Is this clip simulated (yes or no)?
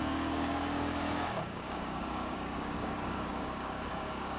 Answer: yes